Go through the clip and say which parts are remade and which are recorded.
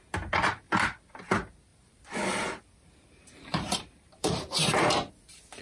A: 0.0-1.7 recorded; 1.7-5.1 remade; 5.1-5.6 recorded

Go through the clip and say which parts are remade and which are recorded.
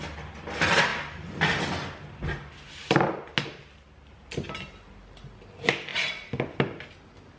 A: 0.0-7.4 recorded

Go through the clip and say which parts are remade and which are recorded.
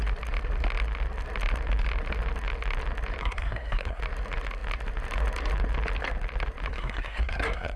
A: 0.0-3.2 recorded; 3.2-4.0 remade; 4.0-6.7 recorded; 6.7-7.8 remade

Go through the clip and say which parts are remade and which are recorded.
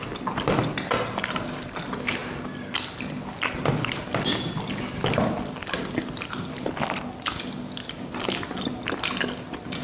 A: 0.0-9.8 recorded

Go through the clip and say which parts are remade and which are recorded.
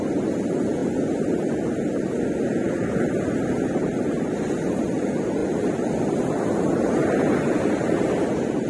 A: 0.0-5.4 recorded; 5.4-7.3 remade; 7.3-8.7 recorded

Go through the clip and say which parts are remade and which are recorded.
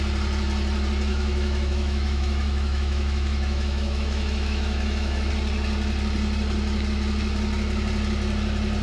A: 0.0-1.1 recorded; 1.1-5.3 remade; 5.3-8.8 recorded